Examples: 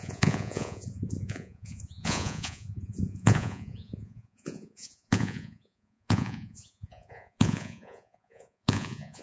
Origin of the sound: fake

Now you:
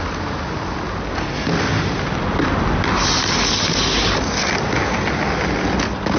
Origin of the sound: real